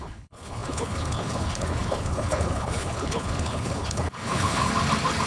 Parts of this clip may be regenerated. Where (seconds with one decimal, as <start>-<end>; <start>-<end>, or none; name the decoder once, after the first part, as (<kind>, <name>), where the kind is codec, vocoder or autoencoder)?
0.0-4.7 (codec, HILCodec)